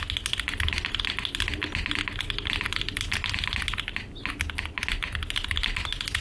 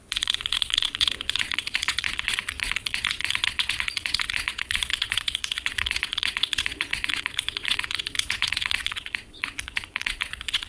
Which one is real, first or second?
first